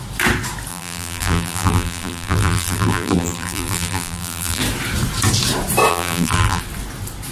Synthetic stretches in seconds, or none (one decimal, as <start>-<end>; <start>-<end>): 0.7-4.6; 5.9-6.6